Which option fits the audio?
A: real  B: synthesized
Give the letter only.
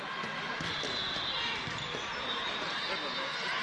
A